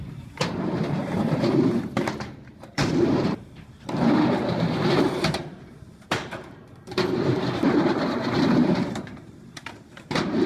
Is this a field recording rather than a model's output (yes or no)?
no